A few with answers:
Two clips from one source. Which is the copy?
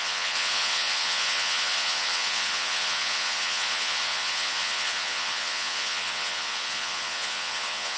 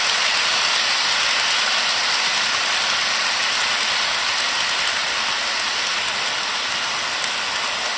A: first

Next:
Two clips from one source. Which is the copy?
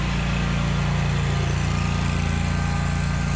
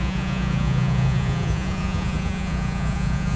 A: second